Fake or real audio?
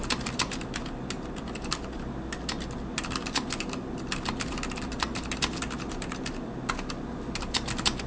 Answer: real